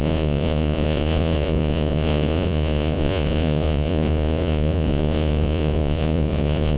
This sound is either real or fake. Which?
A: fake